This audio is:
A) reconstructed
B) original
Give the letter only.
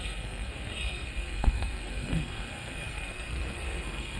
A